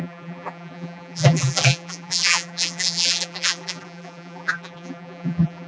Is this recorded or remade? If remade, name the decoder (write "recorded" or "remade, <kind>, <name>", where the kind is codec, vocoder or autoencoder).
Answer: remade, vocoder, BigVGAN v2